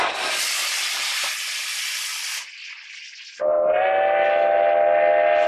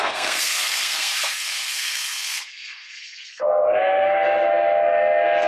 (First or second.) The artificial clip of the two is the second